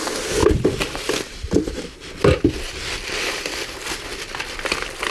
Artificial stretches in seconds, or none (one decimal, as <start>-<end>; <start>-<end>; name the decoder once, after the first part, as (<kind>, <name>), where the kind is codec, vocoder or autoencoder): 0.4-3.5 (vocoder, BigVGAN v2)